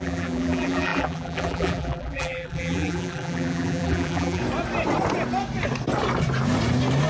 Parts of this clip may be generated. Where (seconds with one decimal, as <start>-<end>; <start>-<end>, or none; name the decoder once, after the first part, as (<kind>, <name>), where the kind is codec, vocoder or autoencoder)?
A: 0.0-4.4 (vocoder, BigVGAN v2)